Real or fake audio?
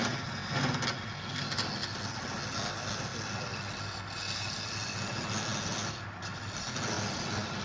real